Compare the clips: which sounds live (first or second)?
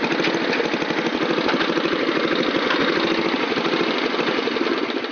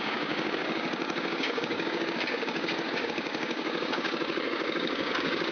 first